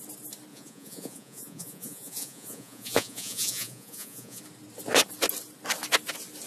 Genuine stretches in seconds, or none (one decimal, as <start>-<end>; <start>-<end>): 0.0-0.5; 4.4-6.5